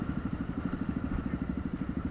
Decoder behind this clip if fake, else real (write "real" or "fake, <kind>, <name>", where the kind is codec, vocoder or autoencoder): fake, vocoder, BigVGAN v2